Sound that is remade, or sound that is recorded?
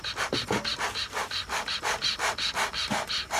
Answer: recorded